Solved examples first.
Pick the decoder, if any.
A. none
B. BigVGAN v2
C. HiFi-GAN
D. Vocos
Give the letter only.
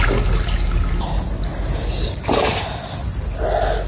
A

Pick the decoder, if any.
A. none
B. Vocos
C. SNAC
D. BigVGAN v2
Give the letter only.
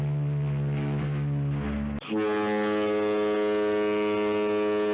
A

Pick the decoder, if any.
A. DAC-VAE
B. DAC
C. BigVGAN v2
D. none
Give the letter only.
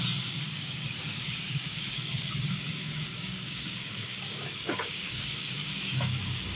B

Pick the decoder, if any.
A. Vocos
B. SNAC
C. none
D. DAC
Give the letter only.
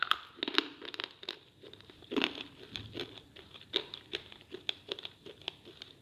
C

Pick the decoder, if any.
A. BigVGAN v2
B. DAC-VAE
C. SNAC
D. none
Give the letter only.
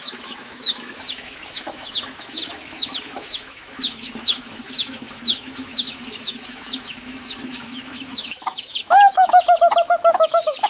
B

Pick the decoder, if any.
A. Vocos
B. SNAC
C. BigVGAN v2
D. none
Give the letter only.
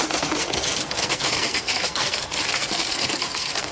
B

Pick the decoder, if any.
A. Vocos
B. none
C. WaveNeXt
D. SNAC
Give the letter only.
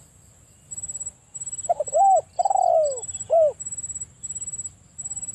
B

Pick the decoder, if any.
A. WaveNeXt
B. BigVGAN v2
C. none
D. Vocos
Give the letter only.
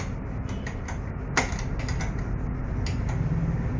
C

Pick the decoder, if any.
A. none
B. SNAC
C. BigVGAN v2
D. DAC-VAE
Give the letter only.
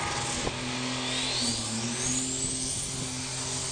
A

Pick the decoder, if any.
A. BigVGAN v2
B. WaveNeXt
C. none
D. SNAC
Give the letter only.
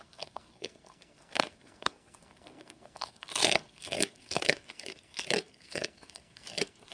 D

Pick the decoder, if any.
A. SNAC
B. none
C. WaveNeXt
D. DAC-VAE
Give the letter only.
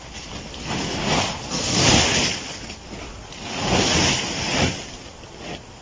B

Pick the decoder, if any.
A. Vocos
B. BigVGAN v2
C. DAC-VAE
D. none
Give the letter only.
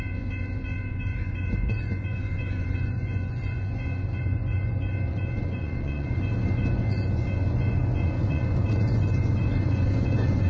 A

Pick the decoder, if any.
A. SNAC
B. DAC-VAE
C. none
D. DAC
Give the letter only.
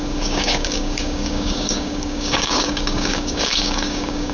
D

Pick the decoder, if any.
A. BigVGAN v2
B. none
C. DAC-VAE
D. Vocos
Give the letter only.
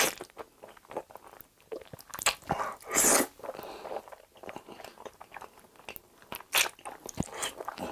B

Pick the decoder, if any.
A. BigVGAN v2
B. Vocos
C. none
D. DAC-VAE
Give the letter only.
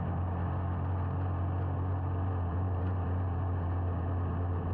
C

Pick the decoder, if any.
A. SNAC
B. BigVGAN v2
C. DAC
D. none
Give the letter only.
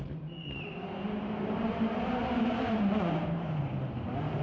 B